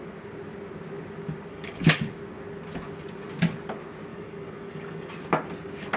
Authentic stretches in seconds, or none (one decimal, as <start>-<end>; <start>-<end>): 0.0-1.5; 2.1-4.1; 5.1-6.0